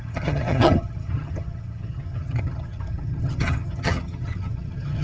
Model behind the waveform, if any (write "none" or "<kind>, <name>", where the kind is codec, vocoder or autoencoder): vocoder, HiFi-GAN